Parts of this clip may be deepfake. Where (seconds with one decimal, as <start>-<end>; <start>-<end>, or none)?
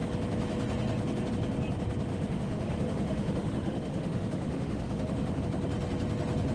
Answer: 2.1-5.4